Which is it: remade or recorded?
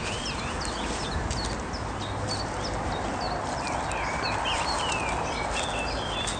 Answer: recorded